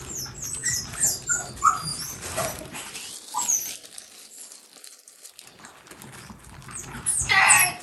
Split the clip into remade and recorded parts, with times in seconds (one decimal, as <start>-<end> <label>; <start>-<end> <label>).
0.0-0.6 recorded; 0.6-1.5 remade; 1.5-1.9 recorded; 1.9-2.9 remade; 2.9-7.8 recorded